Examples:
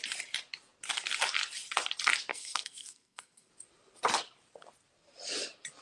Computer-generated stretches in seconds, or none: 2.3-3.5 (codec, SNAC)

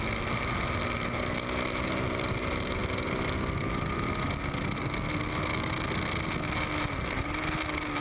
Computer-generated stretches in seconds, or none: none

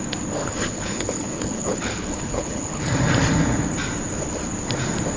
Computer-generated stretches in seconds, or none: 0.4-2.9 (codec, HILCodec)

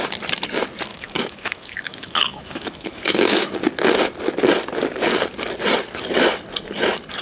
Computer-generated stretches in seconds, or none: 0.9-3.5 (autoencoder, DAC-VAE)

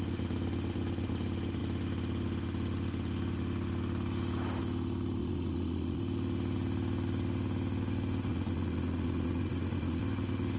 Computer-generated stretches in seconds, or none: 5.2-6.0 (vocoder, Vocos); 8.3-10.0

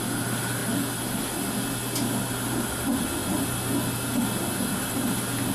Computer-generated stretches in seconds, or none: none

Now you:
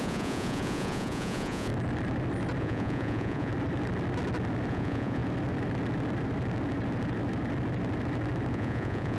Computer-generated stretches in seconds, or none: 0.0-1.7 (vocoder, Vocos); 2.6-3.5; 4.7-5.2; 8.5-9.2